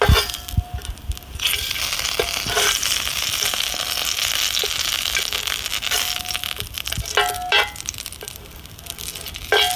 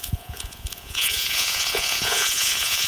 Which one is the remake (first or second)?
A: second